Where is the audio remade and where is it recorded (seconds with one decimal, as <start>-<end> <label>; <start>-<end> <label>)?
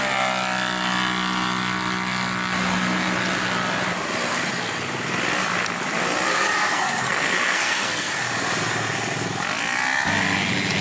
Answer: 0.0-6.3 recorded; 6.3-8.2 remade; 8.2-10.8 recorded